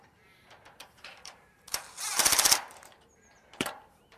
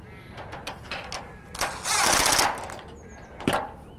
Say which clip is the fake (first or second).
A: first